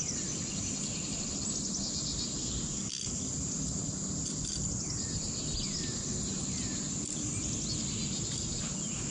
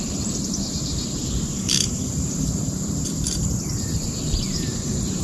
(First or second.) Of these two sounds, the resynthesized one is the second